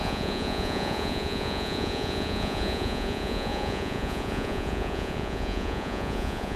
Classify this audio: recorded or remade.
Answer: remade